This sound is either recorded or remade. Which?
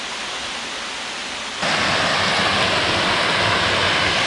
recorded